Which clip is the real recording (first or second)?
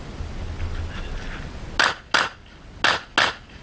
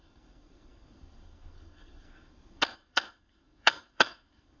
first